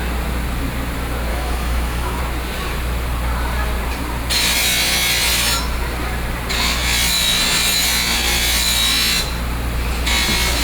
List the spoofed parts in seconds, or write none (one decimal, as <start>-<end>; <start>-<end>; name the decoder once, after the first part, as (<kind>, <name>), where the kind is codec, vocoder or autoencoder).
1.3-2.2 (autoencoder, DAC-VAE)